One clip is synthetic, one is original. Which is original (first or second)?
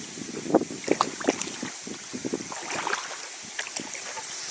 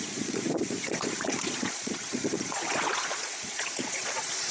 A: first